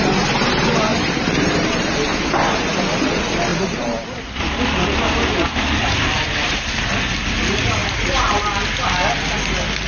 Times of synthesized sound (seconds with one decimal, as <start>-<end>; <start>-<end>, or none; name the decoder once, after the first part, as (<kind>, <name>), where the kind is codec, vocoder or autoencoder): 0.9-1.9 (vocoder, BigVGAN v2); 3.5-6.8; 7.8-8.4